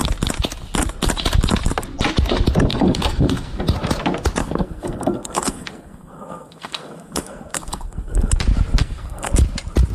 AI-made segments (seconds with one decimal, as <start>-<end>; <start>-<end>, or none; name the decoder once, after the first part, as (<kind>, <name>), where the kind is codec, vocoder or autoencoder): 2.7-3.6 (codec, SNAC); 4.4-8.3; 8.8-9.3

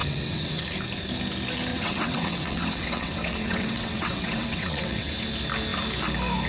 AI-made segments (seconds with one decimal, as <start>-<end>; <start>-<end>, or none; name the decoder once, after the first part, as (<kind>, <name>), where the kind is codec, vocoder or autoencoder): 0.0-0.6 (vocoder, WaveNeXt); 1.7-5.1